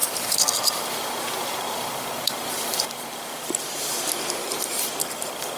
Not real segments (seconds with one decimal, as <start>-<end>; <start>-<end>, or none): 0.0-3.3; 4.4-4.9